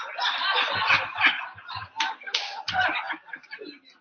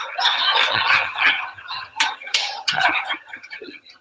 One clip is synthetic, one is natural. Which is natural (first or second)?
first